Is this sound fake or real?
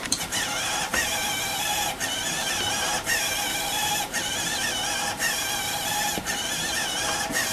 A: fake